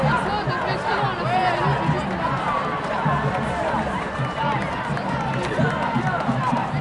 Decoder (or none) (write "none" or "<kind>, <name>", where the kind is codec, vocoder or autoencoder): none